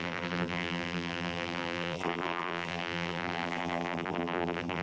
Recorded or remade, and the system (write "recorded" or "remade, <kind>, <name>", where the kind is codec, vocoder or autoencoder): remade, vocoder, BigVGAN v2